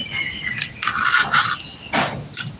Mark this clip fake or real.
real